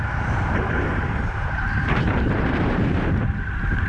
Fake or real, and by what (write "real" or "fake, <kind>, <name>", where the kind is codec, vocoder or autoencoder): fake, vocoder, BigVGAN v2